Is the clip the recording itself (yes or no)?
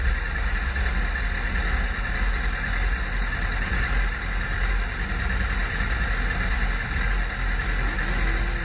yes